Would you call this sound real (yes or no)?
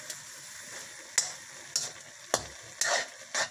yes